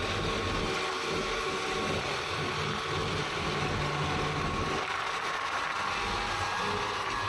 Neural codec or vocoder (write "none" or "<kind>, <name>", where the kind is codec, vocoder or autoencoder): none